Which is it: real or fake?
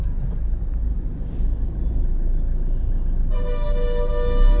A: real